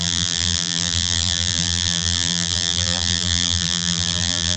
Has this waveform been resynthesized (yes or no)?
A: yes